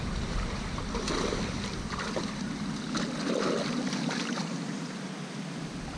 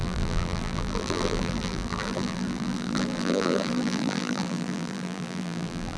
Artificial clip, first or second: second